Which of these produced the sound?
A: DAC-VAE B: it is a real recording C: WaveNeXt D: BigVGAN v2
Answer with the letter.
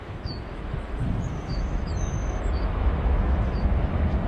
A